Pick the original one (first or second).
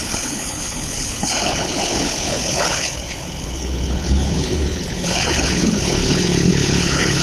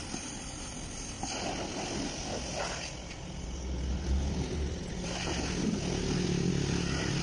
second